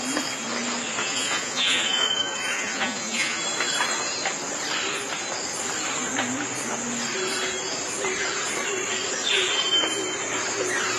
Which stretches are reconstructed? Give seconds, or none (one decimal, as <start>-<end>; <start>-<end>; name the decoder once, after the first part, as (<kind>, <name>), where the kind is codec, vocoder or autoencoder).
1.0-3.4 (vocoder, Vocos)